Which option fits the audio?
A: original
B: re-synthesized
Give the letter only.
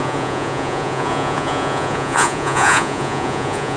B